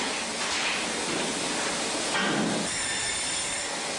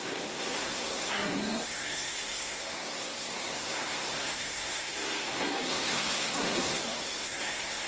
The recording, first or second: first